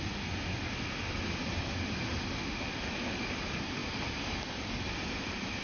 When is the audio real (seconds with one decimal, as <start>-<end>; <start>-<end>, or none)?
0.0-5.6

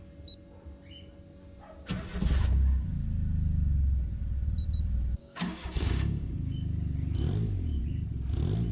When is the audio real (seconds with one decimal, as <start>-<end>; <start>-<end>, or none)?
0.0-5.2; 6.3-8.7

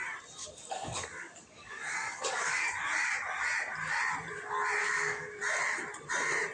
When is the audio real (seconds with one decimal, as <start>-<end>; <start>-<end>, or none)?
0.0-0.4; 2.7-4.8; 5.4-6.5

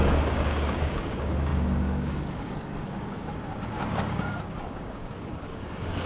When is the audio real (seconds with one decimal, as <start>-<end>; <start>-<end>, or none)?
none